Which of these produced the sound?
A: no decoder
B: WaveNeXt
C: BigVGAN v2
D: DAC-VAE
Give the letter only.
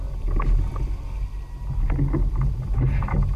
A